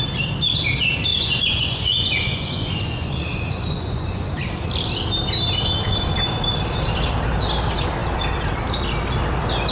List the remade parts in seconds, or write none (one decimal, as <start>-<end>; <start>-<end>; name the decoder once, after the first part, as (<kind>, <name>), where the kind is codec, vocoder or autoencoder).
1.1-4.4 (vocoder, Vocos)